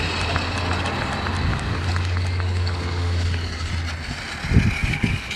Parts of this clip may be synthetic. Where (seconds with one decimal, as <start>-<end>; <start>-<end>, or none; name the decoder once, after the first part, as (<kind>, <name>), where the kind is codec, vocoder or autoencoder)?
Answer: 1.5-3.7 (codec, DAC); 4.8-5.4